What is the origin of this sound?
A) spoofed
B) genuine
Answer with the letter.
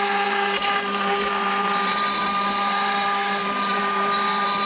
A